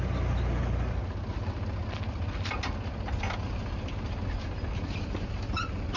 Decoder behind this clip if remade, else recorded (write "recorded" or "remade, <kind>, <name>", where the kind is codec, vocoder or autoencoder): recorded